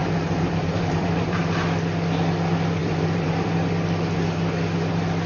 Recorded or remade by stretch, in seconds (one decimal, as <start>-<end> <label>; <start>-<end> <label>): 0.0-1.4 remade; 1.4-2.8 recorded; 2.8-3.5 remade; 3.5-5.3 recorded